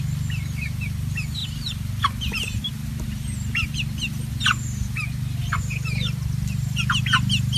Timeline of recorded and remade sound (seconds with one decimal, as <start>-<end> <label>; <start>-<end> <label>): 0.0-7.6 recorded